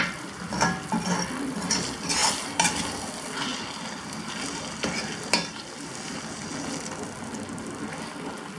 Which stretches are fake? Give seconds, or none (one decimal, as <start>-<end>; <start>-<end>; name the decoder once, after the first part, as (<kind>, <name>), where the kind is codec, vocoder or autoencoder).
none